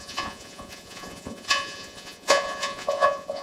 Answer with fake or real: fake